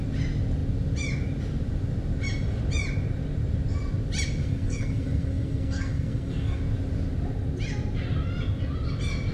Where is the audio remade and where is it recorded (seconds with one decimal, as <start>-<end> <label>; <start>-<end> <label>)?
0.0-4.4 recorded; 4.4-6.6 remade; 6.6-9.3 recorded